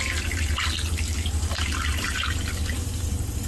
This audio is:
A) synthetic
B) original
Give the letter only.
B